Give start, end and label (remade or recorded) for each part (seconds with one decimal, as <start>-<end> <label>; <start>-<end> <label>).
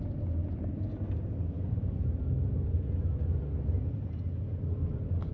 0.0-5.3 recorded